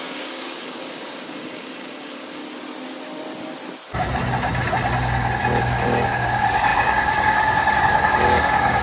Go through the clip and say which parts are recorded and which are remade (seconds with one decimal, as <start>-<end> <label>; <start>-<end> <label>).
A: 0.0-2.4 remade; 2.4-5.6 recorded; 5.6-8.8 remade